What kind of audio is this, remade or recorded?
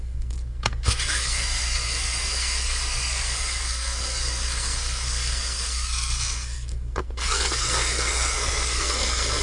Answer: remade